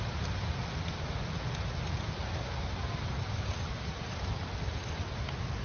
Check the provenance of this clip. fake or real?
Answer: real